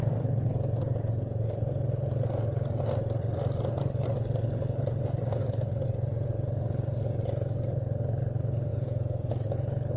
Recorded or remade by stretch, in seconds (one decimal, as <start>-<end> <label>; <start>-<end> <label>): 0.0-8.7 recorded; 8.7-9.3 remade; 9.3-10.0 recorded

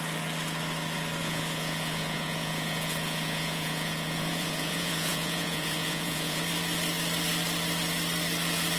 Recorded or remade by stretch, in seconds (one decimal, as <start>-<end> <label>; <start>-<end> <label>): 0.0-1.2 recorded; 1.2-6.4 remade; 6.4-8.8 recorded

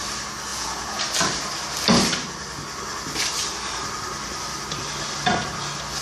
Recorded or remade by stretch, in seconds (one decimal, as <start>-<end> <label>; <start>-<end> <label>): 0.0-0.5 recorded; 0.5-1.0 remade; 1.0-6.0 recorded

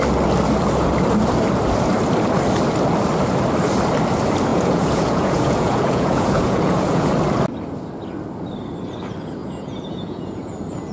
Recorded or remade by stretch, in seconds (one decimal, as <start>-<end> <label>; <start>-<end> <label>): 0.0-4.5 recorded; 4.5-7.1 remade; 7.1-9.4 recorded; 9.4-10.5 remade; 10.5-10.9 recorded

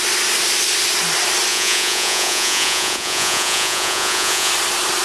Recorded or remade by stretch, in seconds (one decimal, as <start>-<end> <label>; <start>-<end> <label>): 0.0-1.5 recorded; 1.5-4.5 remade; 4.5-5.0 recorded